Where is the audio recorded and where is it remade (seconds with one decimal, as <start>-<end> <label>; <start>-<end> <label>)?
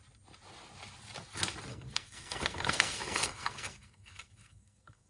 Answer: 0.0-1.7 recorded; 1.7-5.1 remade